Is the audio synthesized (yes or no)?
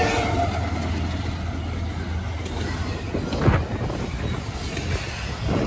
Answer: no